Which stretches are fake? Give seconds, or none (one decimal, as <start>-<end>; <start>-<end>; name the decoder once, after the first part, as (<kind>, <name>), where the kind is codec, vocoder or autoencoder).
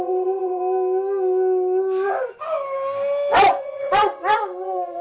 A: 0.0-0.6 (vocoder, WaveNeXt); 3.6-5.0